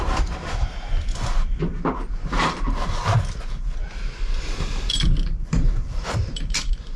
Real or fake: fake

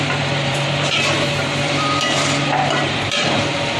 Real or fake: fake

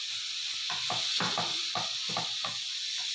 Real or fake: real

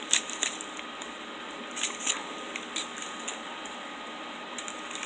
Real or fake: fake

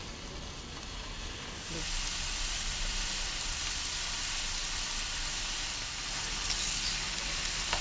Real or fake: real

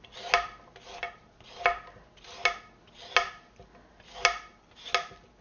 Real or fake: real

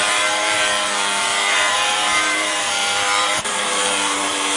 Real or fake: fake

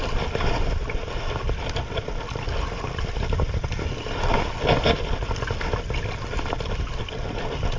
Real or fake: real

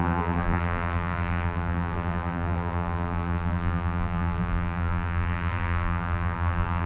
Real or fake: fake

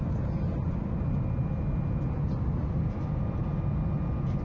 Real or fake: real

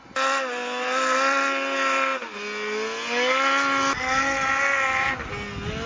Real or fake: real